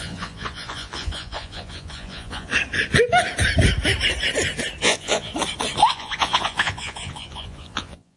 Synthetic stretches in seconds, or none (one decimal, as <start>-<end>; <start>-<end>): 0.0-2.5; 4.8-5.3; 5.9-8.2

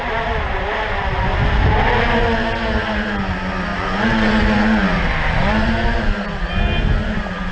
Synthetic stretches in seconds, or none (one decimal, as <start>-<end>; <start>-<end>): 3.7-4.3

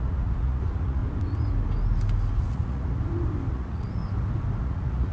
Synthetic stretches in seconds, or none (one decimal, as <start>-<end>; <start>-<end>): 0.0-1.0; 2.4-3.0; 3.5-4.0; 4.6-5.1

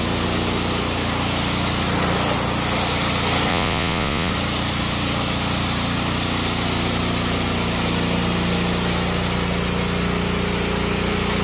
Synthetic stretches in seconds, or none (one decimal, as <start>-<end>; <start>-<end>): 3.5-4.3